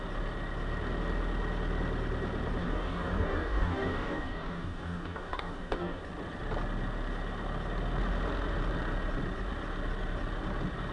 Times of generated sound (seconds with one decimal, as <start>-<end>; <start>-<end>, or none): 2.6-6.0